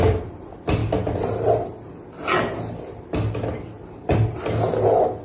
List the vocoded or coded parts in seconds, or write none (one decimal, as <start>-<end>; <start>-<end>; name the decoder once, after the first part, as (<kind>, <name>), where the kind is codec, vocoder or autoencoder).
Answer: none